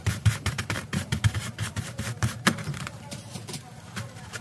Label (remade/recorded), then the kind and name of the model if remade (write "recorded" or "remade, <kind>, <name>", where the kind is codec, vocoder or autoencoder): remade, vocoder, BigVGAN v2